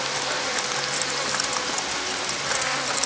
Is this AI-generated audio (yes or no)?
no